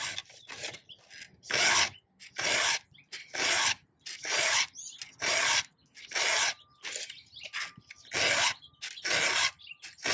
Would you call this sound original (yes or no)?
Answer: yes